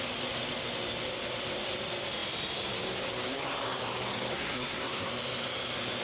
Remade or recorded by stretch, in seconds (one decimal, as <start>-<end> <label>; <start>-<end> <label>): 0.0-4.3 recorded; 4.3-5.1 remade; 5.1-6.0 recorded

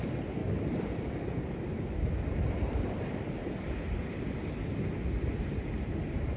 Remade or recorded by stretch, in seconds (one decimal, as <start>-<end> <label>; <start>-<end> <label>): 0.0-6.4 recorded

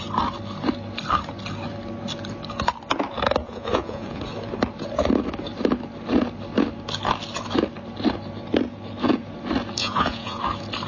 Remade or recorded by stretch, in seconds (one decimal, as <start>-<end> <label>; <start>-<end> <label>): 0.0-3.4 recorded; 3.4-4.2 remade; 4.2-9.8 recorded; 9.8-10.4 remade; 10.4-10.9 recorded

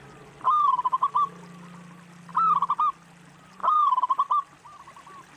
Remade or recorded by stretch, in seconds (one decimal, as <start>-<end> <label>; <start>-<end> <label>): 0.0-5.4 recorded

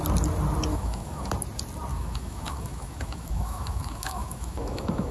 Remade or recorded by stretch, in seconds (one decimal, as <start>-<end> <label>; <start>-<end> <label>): 0.0-0.7 recorded; 0.7-1.3 remade; 1.3-1.9 recorded; 1.9-5.1 remade